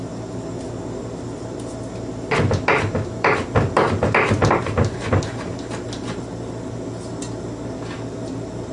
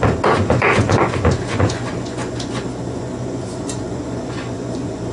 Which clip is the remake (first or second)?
second